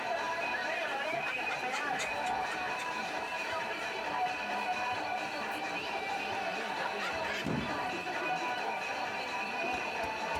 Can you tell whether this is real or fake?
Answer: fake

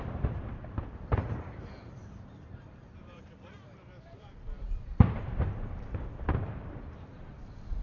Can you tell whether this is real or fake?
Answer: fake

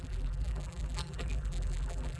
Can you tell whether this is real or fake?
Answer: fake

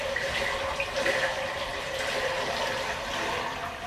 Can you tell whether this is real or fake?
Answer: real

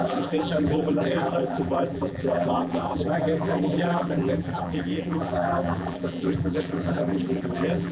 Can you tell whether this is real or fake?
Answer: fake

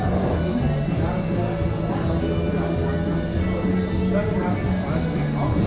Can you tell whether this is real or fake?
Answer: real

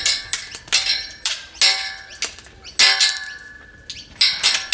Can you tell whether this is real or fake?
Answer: real